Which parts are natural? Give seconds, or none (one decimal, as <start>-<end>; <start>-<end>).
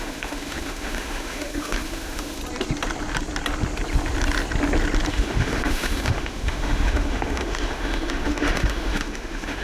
2.4-5.1